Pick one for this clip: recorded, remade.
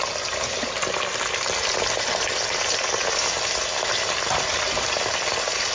recorded